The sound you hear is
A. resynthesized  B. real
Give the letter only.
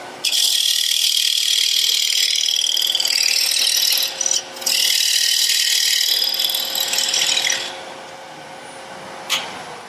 B